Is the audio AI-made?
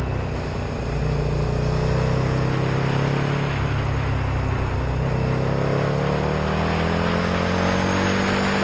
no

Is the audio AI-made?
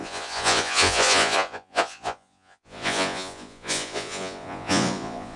yes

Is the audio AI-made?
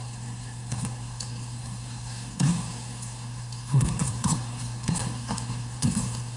yes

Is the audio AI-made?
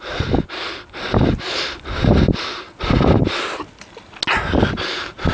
no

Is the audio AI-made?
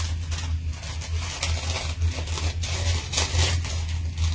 no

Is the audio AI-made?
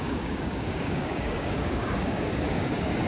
yes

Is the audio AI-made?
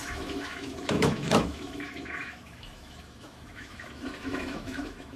yes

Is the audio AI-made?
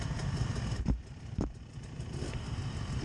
no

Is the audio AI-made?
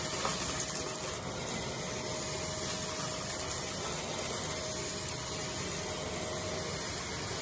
no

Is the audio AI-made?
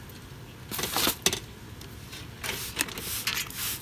no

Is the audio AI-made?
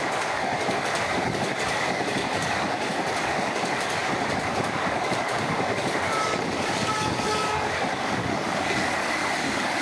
yes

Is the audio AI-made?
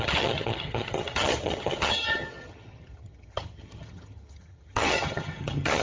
yes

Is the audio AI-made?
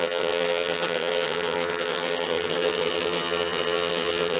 yes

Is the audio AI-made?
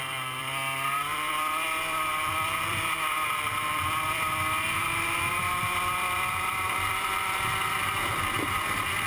yes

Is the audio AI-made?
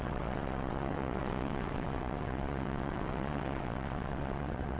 yes